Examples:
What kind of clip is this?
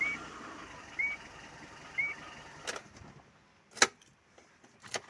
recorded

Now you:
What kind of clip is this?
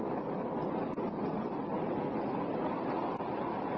recorded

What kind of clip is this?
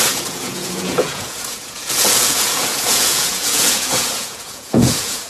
remade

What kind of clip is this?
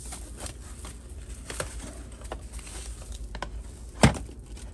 recorded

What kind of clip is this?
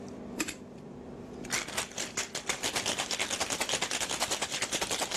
remade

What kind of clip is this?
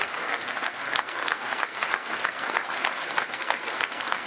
remade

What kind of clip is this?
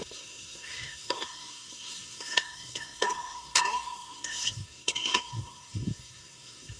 remade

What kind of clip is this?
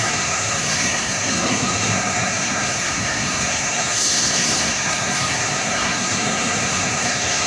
remade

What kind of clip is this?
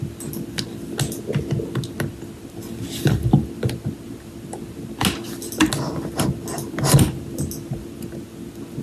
recorded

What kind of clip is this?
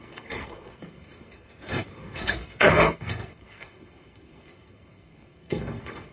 remade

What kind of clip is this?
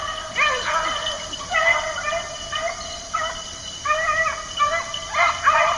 recorded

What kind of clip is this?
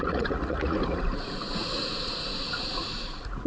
remade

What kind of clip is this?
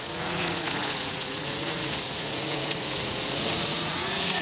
remade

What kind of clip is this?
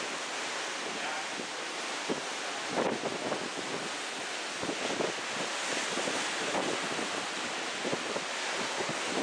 recorded